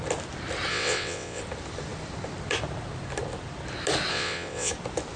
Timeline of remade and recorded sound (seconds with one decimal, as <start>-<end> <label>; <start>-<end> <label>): 0.0-0.7 recorded; 0.7-1.4 remade; 1.4-4.1 recorded; 4.1-4.7 remade; 4.7-5.2 recorded